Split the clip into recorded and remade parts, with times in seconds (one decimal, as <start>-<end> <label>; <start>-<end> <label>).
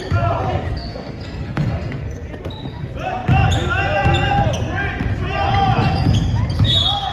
0.0-0.7 recorded; 0.7-2.3 remade; 2.3-7.1 recorded